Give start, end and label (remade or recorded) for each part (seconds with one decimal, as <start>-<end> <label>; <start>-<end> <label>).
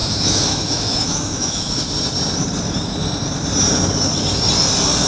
0.0-1.8 remade; 1.8-5.1 recorded